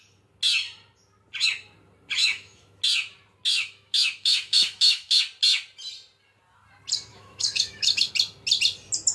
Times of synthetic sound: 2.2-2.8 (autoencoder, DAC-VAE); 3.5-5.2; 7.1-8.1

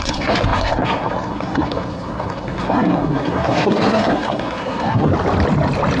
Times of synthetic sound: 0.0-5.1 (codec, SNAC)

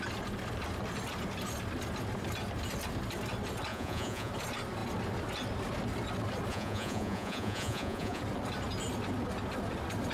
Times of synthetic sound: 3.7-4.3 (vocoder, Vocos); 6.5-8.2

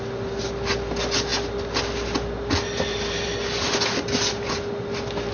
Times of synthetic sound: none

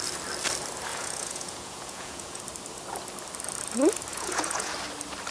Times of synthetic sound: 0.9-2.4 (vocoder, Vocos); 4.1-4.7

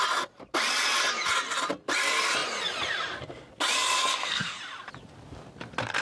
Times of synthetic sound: 4.1-4.6 (codec, SNAC)

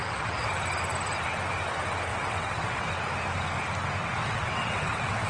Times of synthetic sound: 0.0-0.5 (vocoder, WaveNeXt); 2.1-2.9; 4.0-5.3